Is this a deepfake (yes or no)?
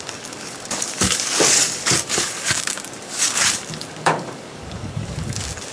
yes